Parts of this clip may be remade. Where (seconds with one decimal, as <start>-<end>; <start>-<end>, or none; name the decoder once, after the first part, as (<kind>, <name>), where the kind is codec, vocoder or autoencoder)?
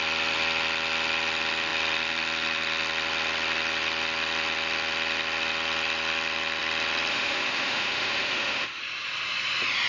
7.1-8.8 (autoencoder, DAC-VAE)